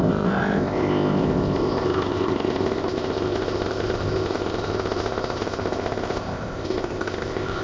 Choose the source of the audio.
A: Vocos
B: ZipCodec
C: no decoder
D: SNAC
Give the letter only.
B